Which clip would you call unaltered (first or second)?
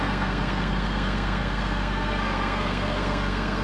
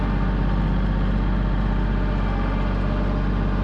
second